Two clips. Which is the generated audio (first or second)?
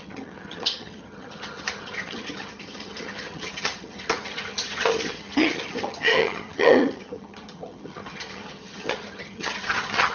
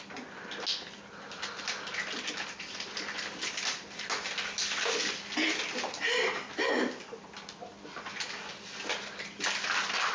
first